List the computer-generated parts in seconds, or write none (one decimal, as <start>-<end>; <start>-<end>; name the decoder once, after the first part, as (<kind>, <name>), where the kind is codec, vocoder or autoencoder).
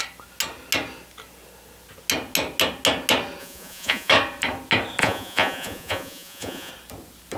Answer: 3.4-4.1 (vocoder, Vocos); 5.0-6.7